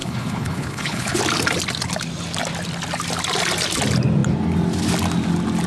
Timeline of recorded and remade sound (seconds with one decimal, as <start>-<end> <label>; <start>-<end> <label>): 0.0-1.2 remade; 1.2-5.7 recorded